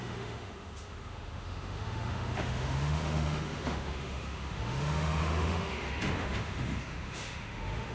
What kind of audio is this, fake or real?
fake